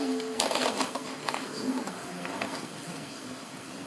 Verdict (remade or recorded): remade